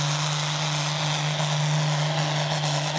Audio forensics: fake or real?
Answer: real